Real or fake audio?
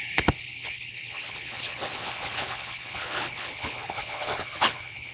fake